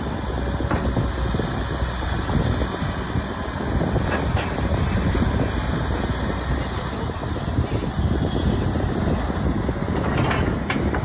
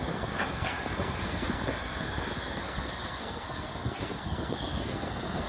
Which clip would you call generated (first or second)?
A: second